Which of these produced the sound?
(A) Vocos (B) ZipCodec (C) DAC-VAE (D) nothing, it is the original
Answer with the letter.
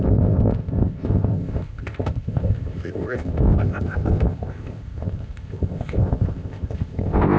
B